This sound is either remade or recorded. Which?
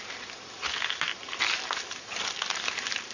recorded